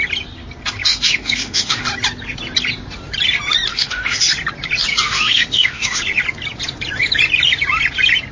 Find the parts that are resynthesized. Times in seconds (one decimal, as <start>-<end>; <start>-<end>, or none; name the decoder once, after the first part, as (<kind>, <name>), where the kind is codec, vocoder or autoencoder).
0.9-1.8 (autoencoder, DAC-VAE); 3.7-4.2; 4.9-6.0